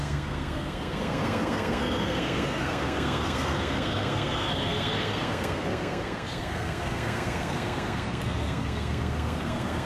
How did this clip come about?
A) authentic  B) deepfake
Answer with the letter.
B